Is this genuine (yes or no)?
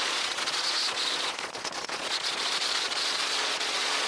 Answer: no